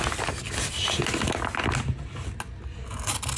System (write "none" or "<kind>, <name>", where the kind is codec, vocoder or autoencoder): none